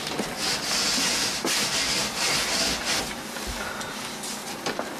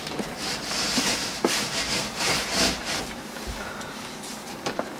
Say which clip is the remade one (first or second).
second